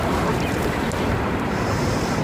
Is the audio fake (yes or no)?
yes